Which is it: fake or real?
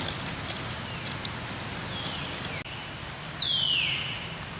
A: real